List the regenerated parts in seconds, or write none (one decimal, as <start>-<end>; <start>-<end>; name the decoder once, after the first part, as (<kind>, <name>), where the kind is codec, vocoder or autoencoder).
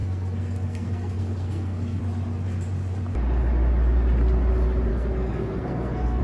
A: 0.0-2.0 (codec, SNAC); 4.9-6.2